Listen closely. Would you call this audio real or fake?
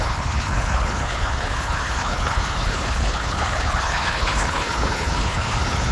fake